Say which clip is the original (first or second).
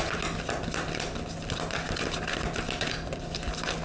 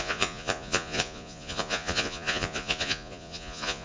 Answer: first